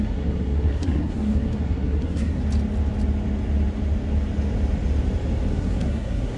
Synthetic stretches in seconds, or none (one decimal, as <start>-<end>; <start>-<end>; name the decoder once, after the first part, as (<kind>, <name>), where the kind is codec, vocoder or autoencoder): 0.0-2.4 (codec, SNAC); 5.5-6.4